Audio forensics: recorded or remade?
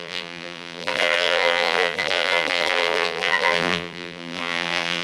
remade